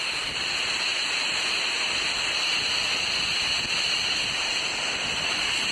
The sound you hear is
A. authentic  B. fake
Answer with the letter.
A